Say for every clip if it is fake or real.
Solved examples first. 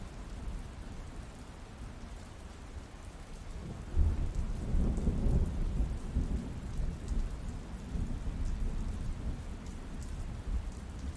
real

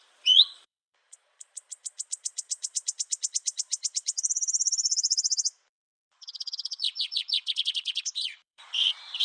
fake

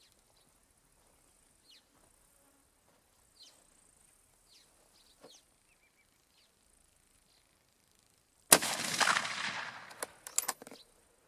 real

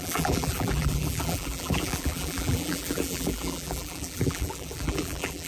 fake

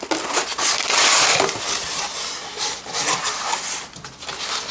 real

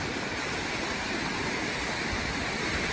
real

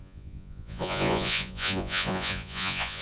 fake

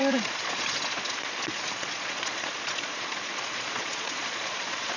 fake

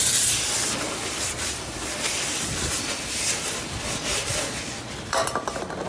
real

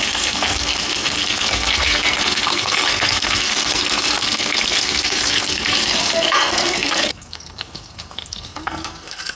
fake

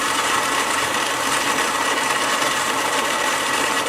fake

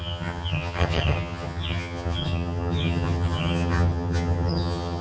fake